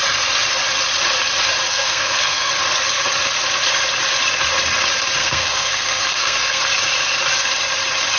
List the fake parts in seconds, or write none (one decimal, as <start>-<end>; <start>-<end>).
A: 1.7-2.5; 5.2-6.6